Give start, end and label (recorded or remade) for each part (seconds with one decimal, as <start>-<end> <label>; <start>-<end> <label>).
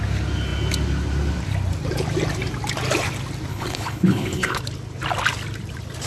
0.0-3.5 recorded; 3.5-4.6 remade; 4.6-6.1 recorded